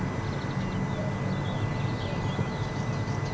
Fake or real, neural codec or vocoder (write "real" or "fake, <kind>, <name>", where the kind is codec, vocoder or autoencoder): real